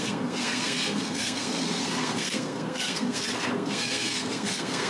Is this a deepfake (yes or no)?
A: yes